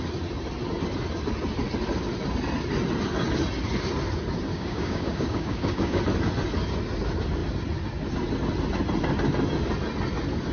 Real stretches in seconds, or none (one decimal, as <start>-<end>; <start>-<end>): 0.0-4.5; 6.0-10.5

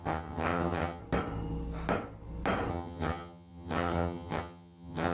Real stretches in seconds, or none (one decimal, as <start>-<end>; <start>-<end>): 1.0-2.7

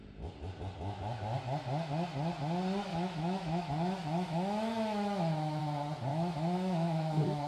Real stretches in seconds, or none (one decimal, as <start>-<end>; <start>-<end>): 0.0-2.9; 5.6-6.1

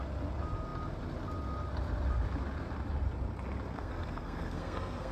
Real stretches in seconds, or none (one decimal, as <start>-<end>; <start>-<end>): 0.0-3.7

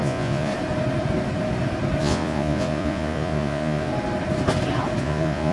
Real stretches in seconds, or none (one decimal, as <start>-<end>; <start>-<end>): 0.5-2.0; 3.9-5.0

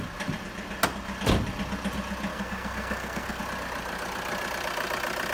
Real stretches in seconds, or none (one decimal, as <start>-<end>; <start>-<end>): 0.0-2.3; 3.4-5.3

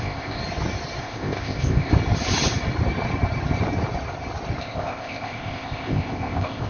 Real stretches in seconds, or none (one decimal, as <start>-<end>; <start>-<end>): 0.4-1.0; 1.9-4.6

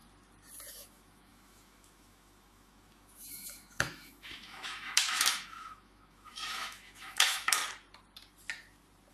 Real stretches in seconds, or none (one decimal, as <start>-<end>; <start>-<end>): 0.0-0.7; 7.6-9.1